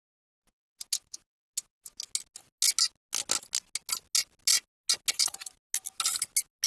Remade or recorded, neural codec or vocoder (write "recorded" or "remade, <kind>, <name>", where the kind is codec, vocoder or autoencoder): recorded